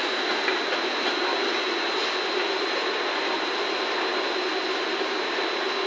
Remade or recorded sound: recorded